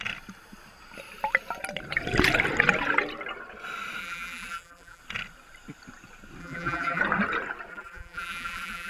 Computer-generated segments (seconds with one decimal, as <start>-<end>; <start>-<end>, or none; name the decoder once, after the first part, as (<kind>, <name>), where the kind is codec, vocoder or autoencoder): 4.0-5.0 (vocoder, BigVGAN v2); 6.4-7.0; 7.7-8.9